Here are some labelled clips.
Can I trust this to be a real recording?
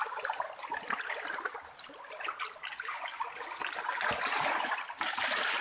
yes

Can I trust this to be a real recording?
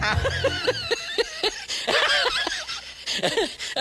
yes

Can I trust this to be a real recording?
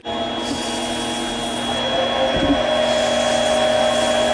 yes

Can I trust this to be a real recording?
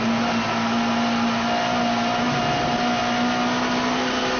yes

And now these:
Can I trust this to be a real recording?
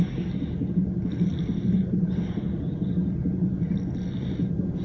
yes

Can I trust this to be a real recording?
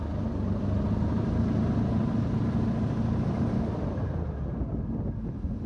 yes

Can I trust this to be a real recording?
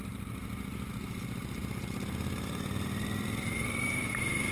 no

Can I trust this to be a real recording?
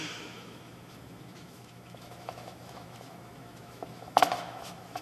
no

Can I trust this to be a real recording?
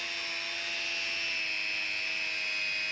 yes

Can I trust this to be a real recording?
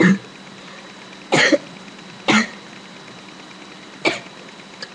yes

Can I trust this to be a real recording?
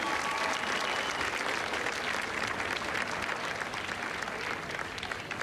yes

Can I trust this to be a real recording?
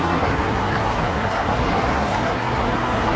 no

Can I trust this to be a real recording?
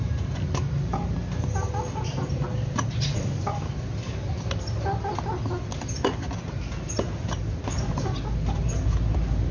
yes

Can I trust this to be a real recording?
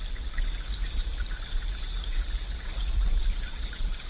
no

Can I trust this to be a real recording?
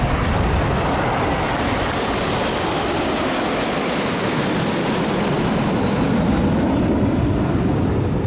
yes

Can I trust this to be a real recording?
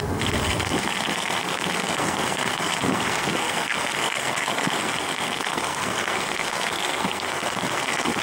no